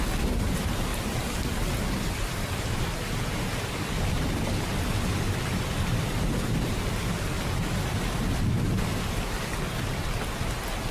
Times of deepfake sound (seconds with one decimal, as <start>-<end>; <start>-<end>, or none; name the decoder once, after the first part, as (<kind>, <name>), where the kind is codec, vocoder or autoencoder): none